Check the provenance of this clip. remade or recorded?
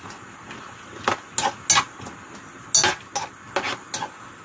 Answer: recorded